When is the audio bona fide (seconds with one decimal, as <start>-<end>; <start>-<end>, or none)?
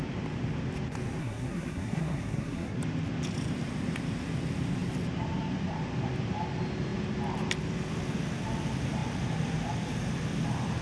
0.0-1.2; 2.8-10.8